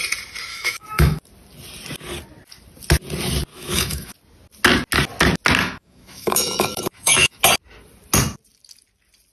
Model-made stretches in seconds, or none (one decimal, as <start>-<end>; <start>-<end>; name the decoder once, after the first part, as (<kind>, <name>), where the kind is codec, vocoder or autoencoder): 0.5-1.2 (autoencoder, DAC-VAE); 3.5-4.1; 5.6-7.4